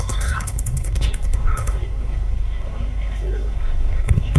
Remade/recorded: remade